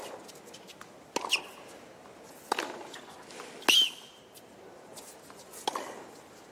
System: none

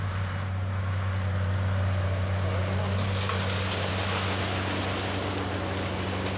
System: none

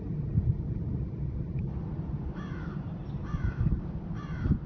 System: vocoder, BigVGAN v2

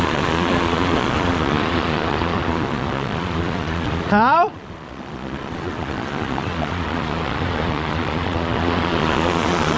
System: vocoder, Vocos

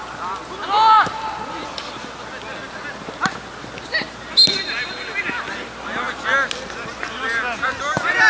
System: none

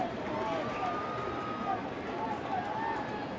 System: none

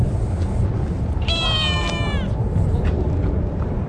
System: none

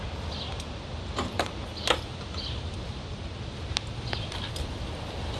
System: none